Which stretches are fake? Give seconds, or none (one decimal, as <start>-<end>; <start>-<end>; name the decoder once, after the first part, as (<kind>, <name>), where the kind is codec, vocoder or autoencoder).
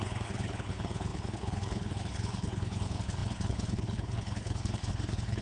0.0-5.4 (codec, HILCodec)